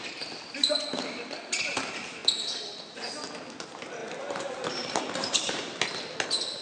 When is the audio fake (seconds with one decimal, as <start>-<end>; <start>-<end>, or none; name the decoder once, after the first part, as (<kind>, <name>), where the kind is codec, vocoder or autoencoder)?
4.0-5.5 (vocoder, BigVGAN v2)